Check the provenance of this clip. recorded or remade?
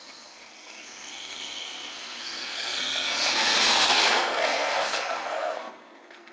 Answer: remade